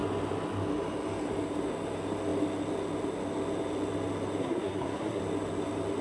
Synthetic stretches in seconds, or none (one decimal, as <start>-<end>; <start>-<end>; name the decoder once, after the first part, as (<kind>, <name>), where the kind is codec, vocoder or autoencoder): 4.4-5.2 (codec, SNAC)